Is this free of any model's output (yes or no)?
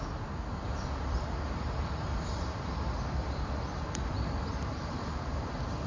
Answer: yes